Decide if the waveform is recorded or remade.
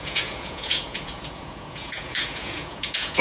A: remade